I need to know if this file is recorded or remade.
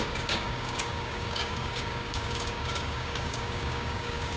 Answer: remade